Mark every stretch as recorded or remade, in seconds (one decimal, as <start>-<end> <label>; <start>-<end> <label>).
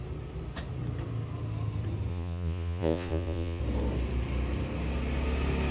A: 0.0-2.1 recorded; 2.1-3.6 remade; 3.6-5.7 recorded